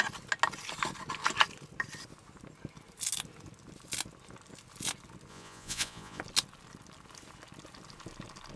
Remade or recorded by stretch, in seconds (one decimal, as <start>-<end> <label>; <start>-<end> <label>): 0.0-5.3 recorded; 5.3-6.2 remade; 6.2-8.6 recorded